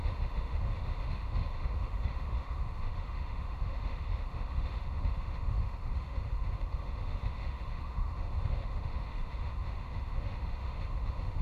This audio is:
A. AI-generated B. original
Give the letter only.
A